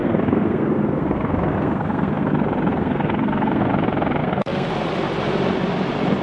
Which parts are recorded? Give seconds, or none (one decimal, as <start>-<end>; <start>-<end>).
2.3-2.7; 3.7-4.2; 4.7-6.2